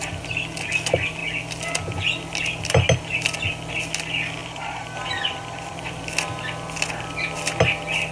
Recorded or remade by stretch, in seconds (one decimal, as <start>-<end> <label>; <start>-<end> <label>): 0.0-4.4 recorded; 4.4-6.0 remade; 6.0-8.1 recorded